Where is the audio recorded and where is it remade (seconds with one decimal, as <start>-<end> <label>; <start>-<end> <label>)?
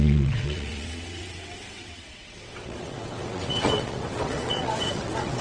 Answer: 0.0-5.4 remade